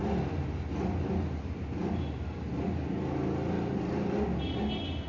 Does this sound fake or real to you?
real